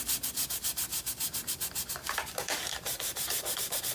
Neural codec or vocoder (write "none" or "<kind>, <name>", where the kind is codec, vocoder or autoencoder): vocoder, BigVGAN v2